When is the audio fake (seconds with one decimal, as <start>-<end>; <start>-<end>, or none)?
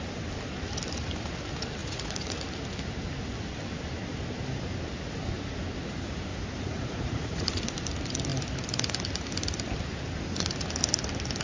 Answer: 1.8-2.4; 6.3-7.6